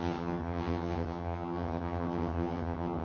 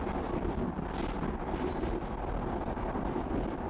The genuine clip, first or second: second